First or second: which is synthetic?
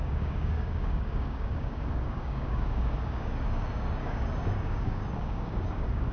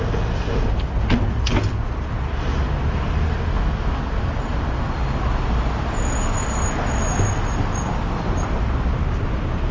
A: first